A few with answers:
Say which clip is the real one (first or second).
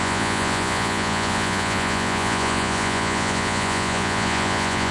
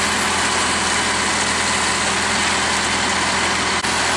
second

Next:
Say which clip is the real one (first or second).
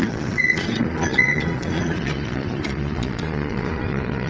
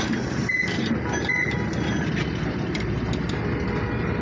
second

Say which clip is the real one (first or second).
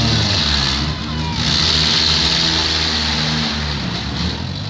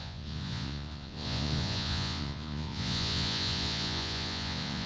first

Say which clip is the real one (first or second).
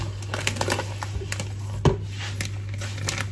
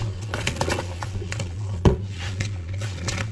first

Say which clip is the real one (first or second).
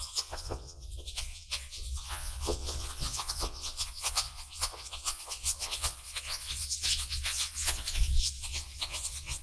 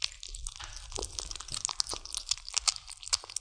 second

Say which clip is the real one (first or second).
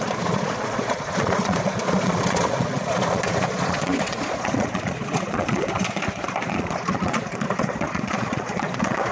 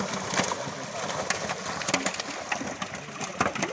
second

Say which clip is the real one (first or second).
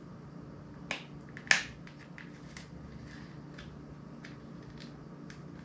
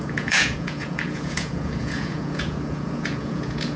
first